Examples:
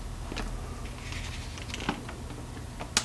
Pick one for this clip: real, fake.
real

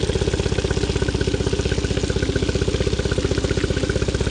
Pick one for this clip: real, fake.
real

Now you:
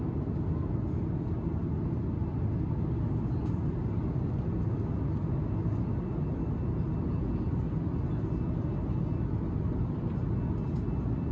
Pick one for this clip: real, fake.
real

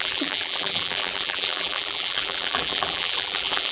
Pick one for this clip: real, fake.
fake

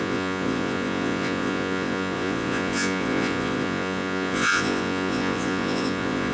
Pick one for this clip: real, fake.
fake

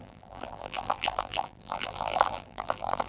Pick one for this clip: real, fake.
fake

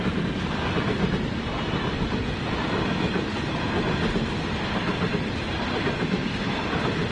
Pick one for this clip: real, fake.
real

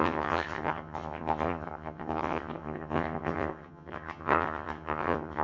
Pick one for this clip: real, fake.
fake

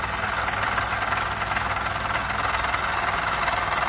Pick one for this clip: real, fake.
real